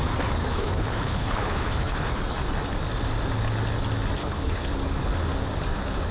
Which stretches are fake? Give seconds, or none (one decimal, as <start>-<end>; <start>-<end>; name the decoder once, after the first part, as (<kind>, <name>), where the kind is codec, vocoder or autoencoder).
0.4-2.2 (codec, HILCodec); 4.2-4.7